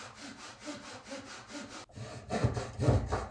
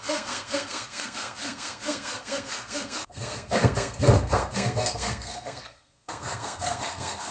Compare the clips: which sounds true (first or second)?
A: first